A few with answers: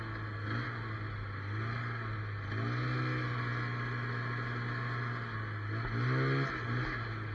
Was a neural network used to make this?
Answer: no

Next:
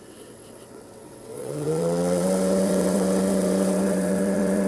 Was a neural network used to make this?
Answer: yes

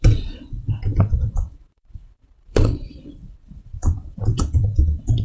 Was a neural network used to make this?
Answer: yes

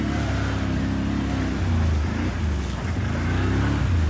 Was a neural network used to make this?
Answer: no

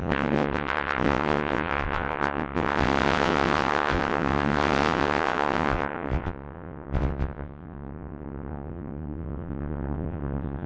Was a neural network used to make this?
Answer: yes